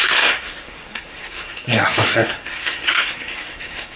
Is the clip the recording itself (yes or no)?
no